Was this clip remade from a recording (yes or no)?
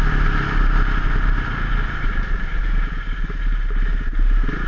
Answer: no